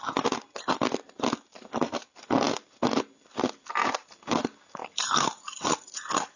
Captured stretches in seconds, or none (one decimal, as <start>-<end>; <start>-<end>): 0.0-6.4